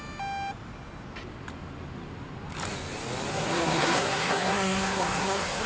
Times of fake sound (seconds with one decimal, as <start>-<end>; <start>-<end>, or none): 3.3-5.7